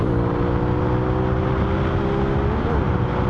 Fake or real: real